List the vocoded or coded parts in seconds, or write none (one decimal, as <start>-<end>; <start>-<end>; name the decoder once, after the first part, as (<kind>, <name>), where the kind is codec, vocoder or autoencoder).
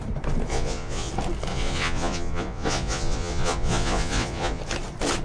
0.5-1.1 (vocoder, Vocos); 1.5-4.6